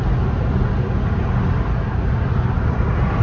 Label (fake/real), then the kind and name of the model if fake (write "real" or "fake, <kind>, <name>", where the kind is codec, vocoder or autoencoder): real